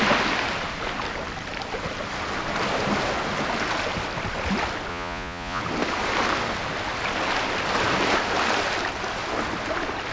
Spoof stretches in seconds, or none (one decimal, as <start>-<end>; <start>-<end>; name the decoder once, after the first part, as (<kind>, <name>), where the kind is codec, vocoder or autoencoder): 4.9-5.6 (vocoder, Vocos)